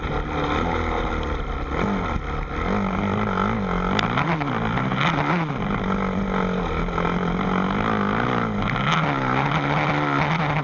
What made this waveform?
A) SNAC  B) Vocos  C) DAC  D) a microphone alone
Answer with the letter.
D